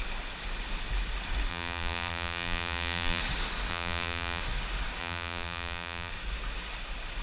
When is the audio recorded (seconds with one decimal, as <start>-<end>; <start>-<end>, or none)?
0.0-1.5; 3.2-3.7; 4.4-5.0; 6.1-7.2